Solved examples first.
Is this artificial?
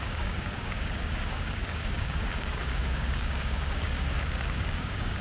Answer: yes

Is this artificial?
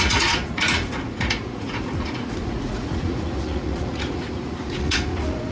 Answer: yes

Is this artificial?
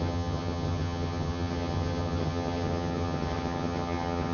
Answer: yes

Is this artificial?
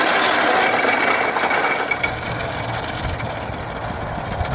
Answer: no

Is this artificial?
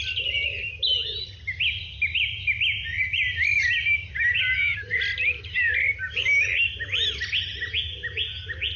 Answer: no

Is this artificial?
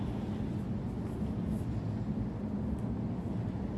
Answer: no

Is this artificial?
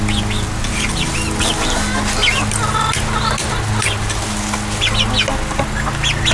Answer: no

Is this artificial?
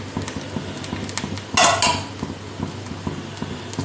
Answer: no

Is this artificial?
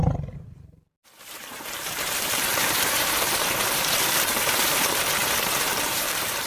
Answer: yes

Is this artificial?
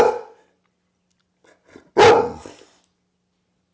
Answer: no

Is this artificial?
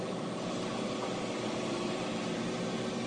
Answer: no